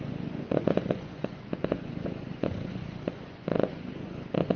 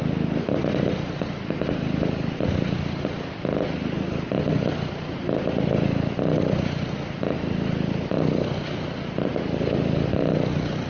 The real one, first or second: second